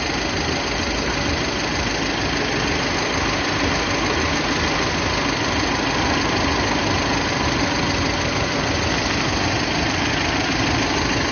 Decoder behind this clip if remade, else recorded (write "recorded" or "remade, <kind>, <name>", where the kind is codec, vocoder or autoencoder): recorded